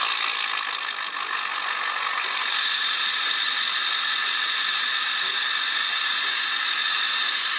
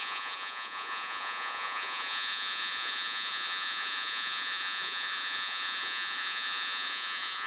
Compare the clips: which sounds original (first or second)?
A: first